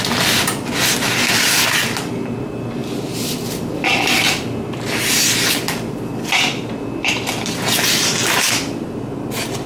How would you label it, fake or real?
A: real